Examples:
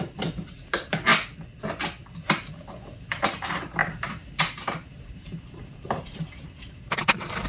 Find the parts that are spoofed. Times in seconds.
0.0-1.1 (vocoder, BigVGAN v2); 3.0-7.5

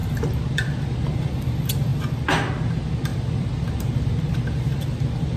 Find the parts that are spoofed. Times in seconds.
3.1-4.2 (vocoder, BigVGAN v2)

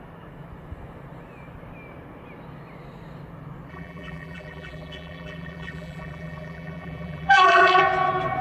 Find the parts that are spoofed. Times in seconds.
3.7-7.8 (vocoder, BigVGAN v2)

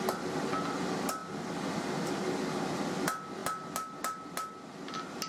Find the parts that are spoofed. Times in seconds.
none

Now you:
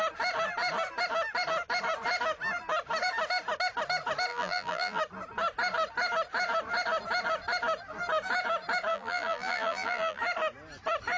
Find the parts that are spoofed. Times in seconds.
4.3-5.0 (vocoder, BigVGAN v2); 8.9-10.2

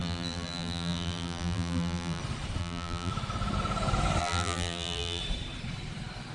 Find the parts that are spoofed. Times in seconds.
0.0-2.2 (vocoder, BigVGAN v2); 2.6-3.1; 4.2-5.2